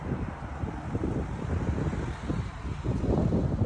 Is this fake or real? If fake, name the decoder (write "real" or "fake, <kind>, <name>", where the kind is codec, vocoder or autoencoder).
real